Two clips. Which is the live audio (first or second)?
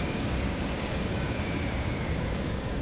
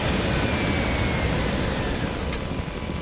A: second